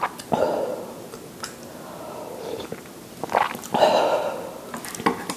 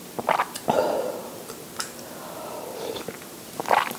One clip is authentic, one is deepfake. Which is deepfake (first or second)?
second